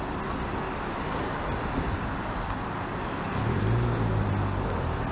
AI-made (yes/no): no